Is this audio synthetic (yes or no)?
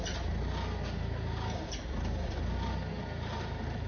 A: no